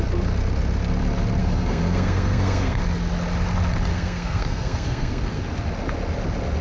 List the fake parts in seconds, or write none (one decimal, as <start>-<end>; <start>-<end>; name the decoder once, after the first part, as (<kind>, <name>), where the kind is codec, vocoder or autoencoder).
1.4-2.8 (codec, SNAC); 3.9-5.4